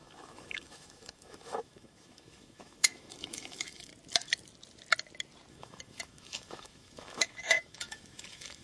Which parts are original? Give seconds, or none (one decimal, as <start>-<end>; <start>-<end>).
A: 3.9-5.5